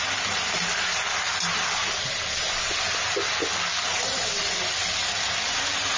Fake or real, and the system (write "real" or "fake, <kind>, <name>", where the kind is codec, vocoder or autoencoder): real